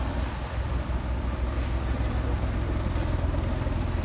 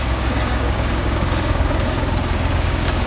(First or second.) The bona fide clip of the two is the first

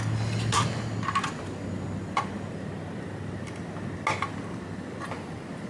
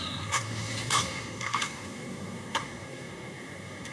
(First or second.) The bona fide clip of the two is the first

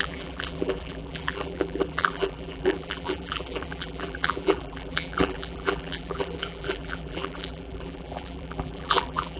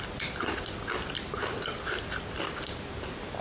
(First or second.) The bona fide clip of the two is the second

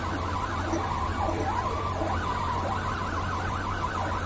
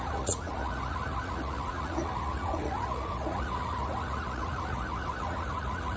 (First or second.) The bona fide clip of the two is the first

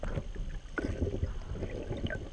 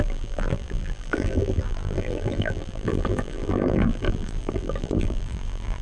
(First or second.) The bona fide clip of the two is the first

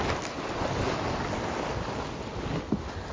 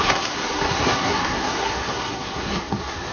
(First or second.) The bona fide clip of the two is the first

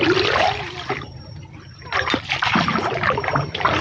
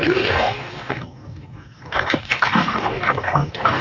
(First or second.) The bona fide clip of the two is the first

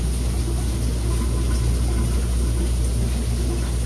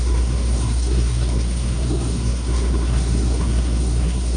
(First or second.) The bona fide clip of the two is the first